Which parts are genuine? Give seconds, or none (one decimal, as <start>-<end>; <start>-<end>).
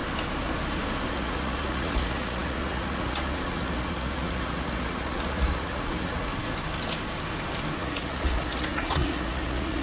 0.0-1.1; 6.3-7.8